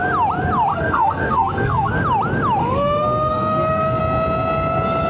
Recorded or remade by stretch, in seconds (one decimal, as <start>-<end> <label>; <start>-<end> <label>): 0.0-0.7 recorded; 0.7-1.9 remade; 1.9-2.6 recorded; 2.6-4.0 remade; 4.0-5.1 recorded